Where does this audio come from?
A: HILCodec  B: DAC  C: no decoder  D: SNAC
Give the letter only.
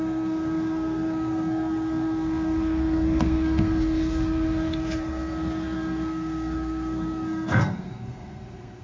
D